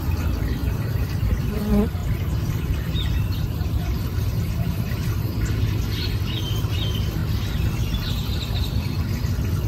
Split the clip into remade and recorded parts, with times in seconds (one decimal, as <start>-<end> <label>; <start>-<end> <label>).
0.0-0.6 recorded; 0.6-1.5 remade; 1.5-2.0 recorded; 2.0-5.5 remade; 5.5-9.7 recorded